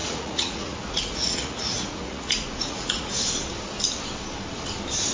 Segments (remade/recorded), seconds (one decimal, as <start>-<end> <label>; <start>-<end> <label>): 0.0-3.1 remade; 3.1-5.1 recorded